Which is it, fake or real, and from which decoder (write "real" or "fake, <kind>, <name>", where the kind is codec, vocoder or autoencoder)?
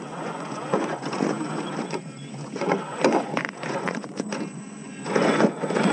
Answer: fake, vocoder, Vocos